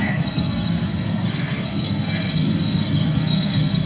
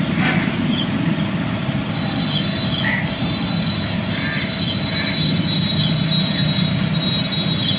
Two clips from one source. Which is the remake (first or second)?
first